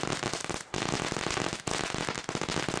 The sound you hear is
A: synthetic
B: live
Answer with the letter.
B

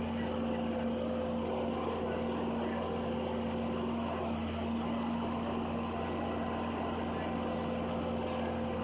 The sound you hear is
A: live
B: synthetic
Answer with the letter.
A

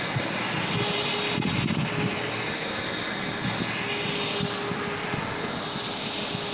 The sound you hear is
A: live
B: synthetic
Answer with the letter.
A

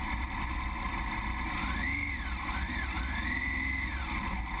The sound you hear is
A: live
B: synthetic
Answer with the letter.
A